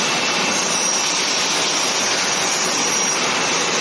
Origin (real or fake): real